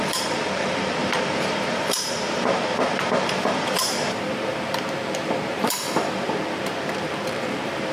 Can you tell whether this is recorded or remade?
remade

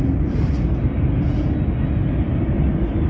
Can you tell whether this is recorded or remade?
recorded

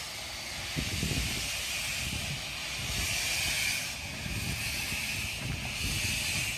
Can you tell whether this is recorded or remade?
recorded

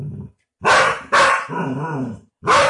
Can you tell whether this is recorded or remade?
recorded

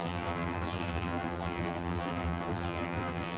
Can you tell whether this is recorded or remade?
remade